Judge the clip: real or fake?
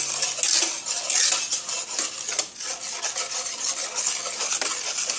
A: real